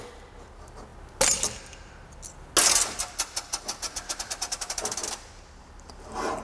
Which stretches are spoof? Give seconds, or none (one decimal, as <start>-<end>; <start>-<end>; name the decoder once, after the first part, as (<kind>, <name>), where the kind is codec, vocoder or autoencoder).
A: none